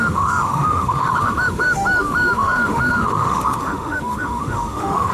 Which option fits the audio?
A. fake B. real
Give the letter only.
A